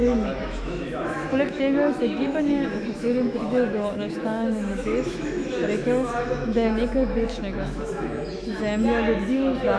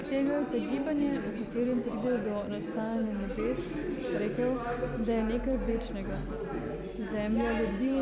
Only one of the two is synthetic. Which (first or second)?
first